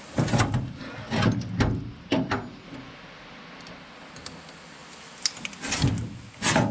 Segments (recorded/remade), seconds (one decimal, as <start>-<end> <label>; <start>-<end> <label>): 0.0-6.7 recorded